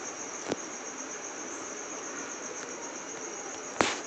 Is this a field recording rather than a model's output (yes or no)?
no